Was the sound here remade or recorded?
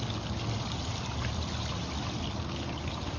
recorded